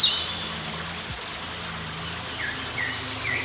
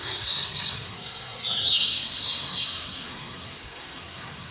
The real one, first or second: first